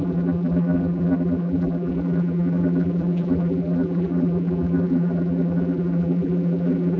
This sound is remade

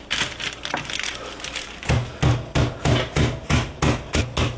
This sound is recorded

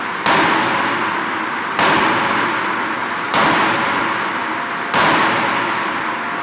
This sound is recorded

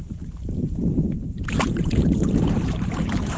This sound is remade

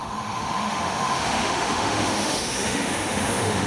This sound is remade